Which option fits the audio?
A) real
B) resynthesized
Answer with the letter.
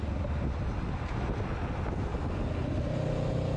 A